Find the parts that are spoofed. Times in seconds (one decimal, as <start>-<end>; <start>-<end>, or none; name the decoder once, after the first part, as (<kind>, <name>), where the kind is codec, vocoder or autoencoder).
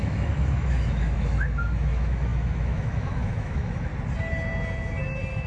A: 0.0-3.9 (autoencoder, DAC-VAE)